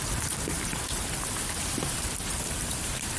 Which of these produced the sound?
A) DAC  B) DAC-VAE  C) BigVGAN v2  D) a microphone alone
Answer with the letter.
C